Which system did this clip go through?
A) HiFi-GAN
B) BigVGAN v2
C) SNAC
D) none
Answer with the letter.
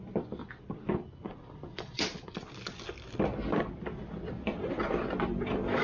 D